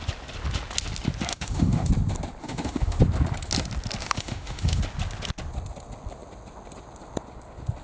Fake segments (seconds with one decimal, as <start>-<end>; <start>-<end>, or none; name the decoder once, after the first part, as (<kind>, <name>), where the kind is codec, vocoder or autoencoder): 1.3-1.9 (autoencoder, DAC-VAE); 2.4-3.0; 4.0-4.8